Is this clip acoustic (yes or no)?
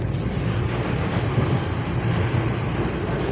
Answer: yes